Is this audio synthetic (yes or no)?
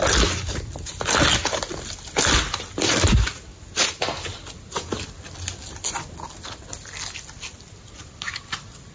no